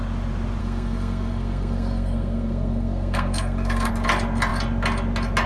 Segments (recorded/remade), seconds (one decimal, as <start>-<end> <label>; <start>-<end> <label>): 0.0-0.6 recorded; 0.6-3.9 remade; 3.9-5.5 recorded